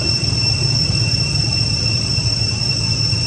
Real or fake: real